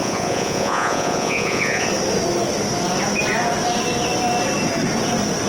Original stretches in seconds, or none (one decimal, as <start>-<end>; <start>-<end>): 1.9-5.5